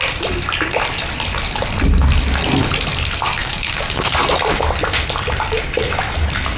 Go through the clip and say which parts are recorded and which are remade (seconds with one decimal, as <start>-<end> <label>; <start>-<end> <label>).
0.0-3.4 recorded; 3.4-4.2 remade; 4.2-6.6 recorded